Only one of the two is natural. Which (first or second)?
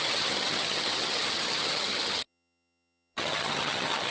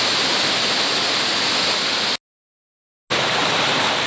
second